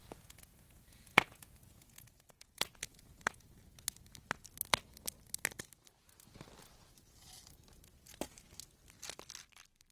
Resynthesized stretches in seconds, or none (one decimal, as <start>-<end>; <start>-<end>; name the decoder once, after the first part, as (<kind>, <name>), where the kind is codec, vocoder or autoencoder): 0.0-3.6 (vocoder, Vocos)